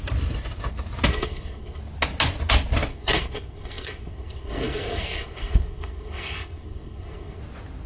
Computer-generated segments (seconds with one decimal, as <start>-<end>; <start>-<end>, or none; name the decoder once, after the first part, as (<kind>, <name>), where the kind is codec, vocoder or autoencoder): 1.1-1.8 (codec, SNAC); 2.9-7.4